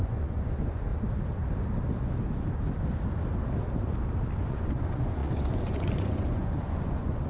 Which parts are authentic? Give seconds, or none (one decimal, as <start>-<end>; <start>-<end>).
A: 0.9-4.5

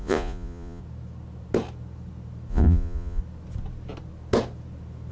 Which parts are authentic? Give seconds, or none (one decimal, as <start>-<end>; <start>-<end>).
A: 0.8-2.5; 3.2-5.1

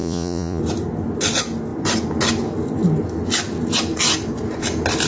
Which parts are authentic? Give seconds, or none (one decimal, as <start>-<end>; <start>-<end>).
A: 0.6-5.1

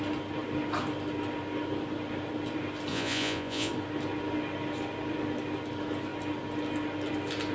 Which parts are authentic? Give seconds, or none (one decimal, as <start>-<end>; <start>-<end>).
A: 0.0-2.9; 3.7-7.5

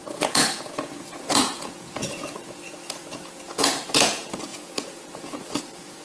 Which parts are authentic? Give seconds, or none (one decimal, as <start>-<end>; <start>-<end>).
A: none